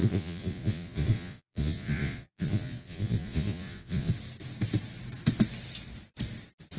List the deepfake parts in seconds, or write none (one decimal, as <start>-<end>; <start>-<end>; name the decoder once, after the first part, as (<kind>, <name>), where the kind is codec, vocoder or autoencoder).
0.0-4.1 (vocoder, Vocos)